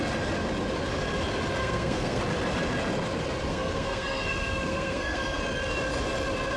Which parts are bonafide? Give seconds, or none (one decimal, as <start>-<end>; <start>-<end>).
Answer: 0.0-1.6; 2.2-3.5; 5.4-6.6